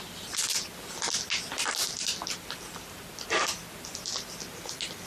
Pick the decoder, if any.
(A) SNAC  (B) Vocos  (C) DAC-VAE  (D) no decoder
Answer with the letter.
D